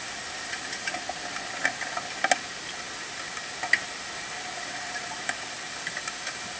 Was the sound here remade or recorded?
recorded